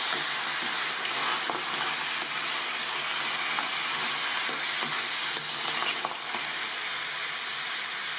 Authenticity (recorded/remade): recorded